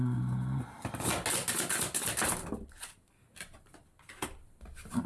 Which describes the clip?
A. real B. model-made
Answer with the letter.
A